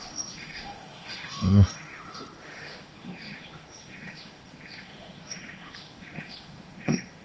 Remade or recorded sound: remade